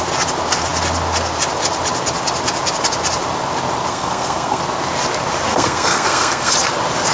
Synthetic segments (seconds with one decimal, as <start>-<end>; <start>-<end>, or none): 3.9-4.6; 5.5-6.5